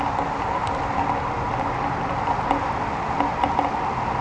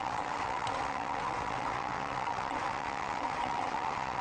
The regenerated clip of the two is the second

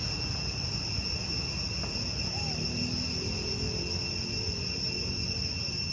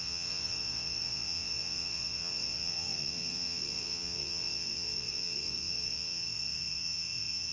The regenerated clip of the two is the second